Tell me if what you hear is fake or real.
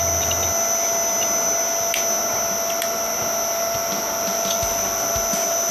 real